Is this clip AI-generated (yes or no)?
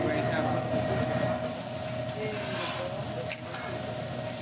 no